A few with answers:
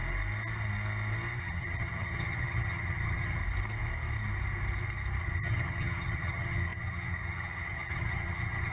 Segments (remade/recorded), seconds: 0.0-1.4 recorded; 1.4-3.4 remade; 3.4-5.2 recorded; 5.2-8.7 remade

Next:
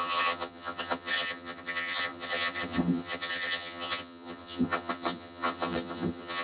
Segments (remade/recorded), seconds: 0.0-6.4 remade

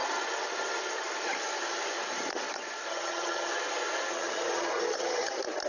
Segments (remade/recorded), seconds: 0.0-2.9 recorded; 2.9-3.5 remade; 3.5-4.1 recorded; 4.1-5.3 remade; 5.3-5.7 recorded

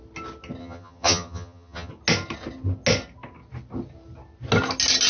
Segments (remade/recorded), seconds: 0.0-0.6 recorded; 0.6-1.9 remade; 1.9-5.1 recorded

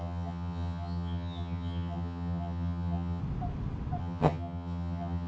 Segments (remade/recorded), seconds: 0.0-3.2 remade; 3.2-4.0 recorded; 4.0-5.3 remade

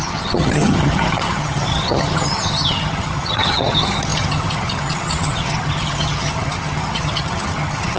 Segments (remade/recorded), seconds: 0.0-8.0 remade

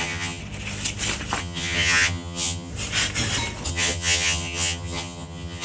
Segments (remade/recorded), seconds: 0.0-0.4 remade; 0.4-1.4 recorded; 1.4-2.7 remade; 2.7-3.7 recorded; 3.7-5.6 remade